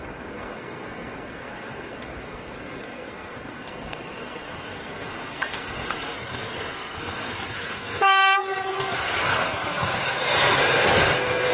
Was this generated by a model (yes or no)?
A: yes